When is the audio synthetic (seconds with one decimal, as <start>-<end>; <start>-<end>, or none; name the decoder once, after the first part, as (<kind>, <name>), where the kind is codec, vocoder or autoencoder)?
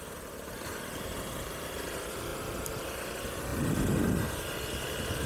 0.0-2.3 (vocoder, BigVGAN v2); 2.8-3.5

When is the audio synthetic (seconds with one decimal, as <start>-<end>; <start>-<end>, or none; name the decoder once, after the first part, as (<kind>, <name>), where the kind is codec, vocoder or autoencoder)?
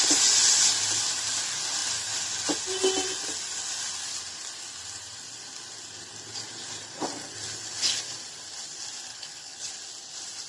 9.1-9.7 (codec, HILCodec)